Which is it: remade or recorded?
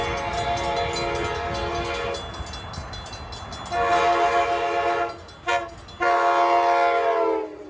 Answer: recorded